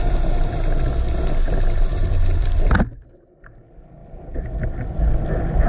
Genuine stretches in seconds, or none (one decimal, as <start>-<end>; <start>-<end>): 0.0-2.0; 2.7-4.0; 4.6-5.7